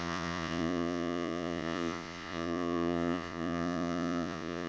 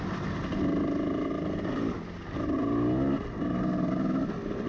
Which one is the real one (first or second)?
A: second